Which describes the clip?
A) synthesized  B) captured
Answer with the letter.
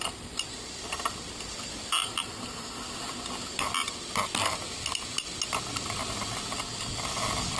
B